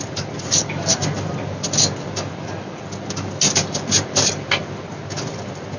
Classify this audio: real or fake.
real